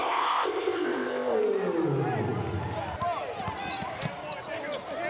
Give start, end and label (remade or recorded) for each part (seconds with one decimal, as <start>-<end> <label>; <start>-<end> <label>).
0.0-1.4 remade; 1.4-5.1 recorded